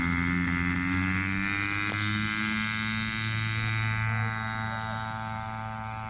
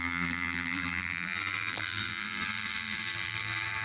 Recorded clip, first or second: first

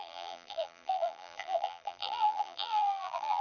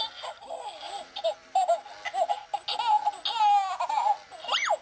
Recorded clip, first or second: second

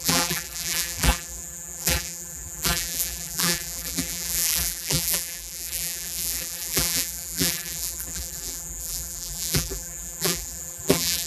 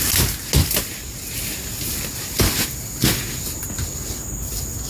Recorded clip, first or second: second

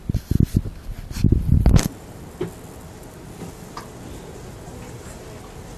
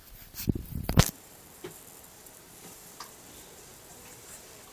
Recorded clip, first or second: first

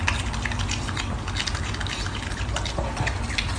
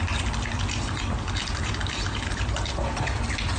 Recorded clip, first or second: first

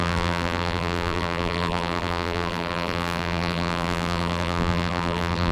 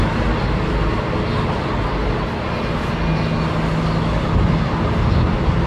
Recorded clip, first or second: second